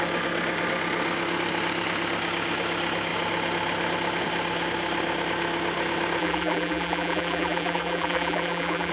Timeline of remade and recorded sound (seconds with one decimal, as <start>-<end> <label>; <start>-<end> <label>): 0.0-6.2 recorded; 6.2-8.9 remade